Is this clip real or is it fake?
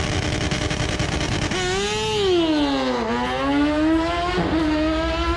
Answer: real